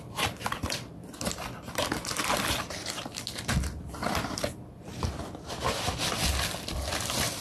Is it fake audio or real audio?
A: real